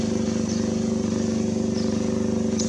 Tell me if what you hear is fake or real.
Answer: real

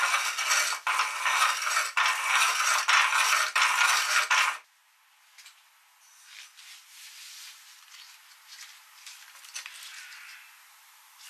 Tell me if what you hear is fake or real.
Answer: real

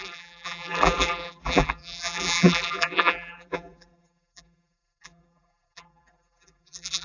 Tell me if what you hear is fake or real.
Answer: fake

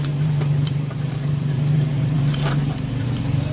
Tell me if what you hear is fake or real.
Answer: fake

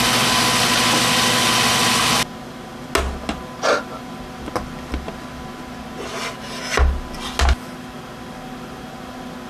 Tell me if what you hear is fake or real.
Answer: real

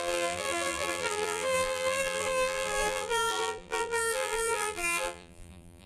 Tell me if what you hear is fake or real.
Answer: fake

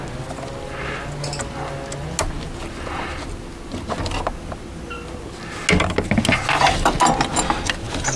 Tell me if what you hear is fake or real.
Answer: real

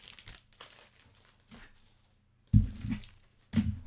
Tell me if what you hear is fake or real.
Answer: real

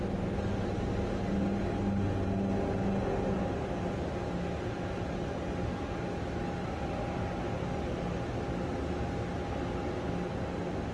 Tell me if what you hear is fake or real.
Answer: real